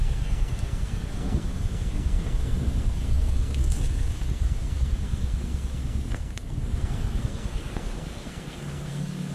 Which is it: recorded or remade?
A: remade